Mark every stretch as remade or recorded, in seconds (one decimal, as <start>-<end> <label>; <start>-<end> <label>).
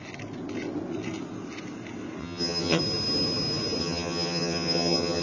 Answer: 0.0-2.2 recorded; 2.2-2.8 remade; 2.8-3.8 recorded; 3.8-5.2 remade